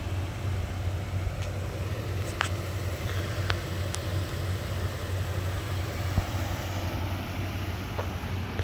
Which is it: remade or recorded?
recorded